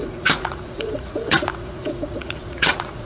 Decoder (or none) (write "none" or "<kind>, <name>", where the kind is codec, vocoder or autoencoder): vocoder, Vocos